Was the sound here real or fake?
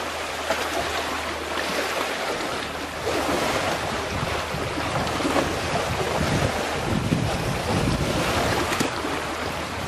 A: real